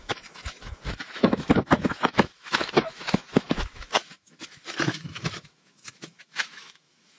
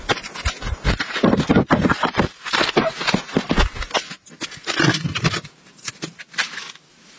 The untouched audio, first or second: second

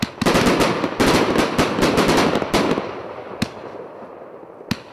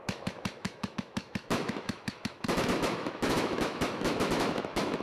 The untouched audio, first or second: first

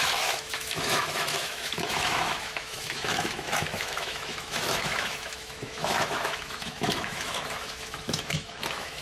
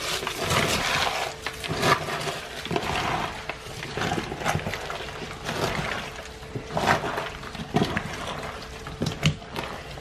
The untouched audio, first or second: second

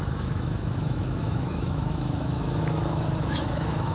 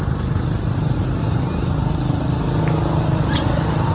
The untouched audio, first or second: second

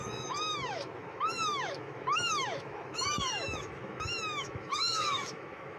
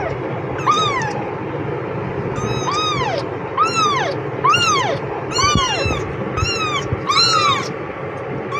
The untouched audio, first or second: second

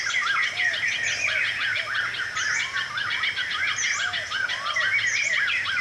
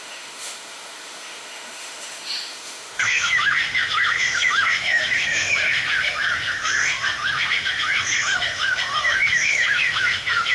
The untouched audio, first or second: first